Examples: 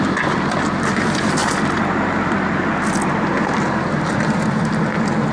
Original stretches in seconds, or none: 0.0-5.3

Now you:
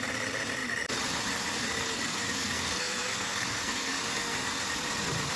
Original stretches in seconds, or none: 0.0-1.8; 4.5-5.4

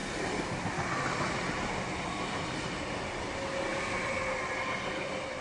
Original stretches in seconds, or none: 0.0-5.4

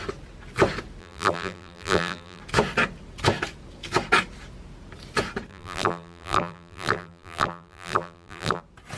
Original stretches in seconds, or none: 0.0-1.0; 2.4-5.5; 8.6-9.0

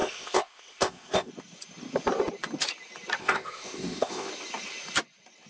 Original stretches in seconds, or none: 1.3-3.2; 4.3-5.5